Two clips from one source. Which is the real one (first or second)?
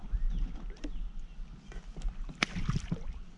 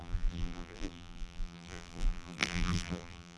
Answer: first